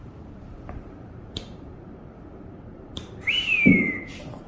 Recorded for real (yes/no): no